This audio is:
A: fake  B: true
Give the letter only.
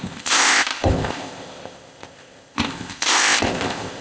A